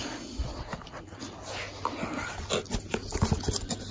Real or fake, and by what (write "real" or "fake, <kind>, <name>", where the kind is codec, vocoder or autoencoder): real